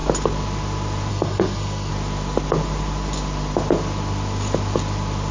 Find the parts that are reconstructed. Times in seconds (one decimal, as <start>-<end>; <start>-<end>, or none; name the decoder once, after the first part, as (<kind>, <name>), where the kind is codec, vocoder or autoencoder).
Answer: 1.1-1.9 (codec, SNAC)